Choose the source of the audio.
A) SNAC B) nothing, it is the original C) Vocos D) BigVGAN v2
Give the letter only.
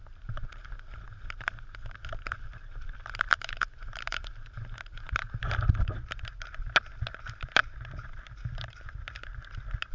B